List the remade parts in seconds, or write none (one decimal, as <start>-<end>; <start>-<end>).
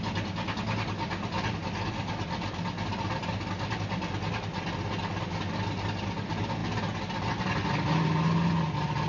none